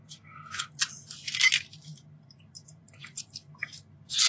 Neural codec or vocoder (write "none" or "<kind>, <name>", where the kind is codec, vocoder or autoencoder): none